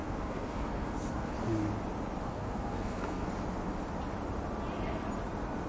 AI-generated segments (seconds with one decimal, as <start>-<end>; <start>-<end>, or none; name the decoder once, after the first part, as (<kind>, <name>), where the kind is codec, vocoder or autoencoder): 0.0-1.3 (codec, SNAC); 2.2-3.3